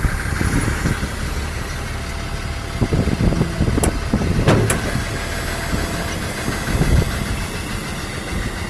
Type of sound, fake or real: real